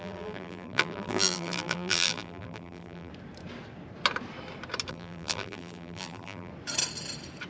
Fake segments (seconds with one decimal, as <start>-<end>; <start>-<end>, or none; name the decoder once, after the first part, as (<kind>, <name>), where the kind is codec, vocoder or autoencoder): 0.0-3.1 (vocoder, BigVGAN v2); 4.9-6.5